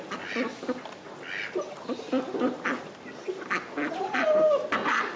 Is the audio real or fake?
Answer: real